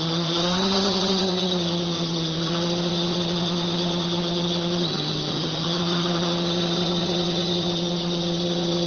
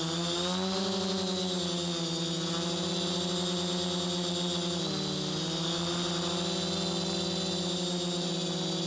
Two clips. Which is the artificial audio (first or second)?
first